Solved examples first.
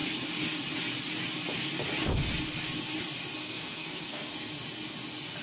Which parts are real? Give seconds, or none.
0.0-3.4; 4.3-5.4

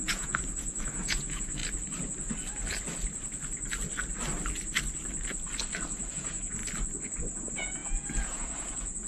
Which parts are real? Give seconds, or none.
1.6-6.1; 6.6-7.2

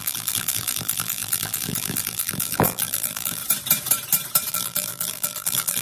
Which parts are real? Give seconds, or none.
3.4-4.5

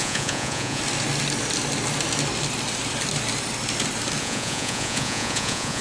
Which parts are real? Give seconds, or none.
0.8-4.2